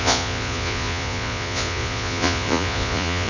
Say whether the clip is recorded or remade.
remade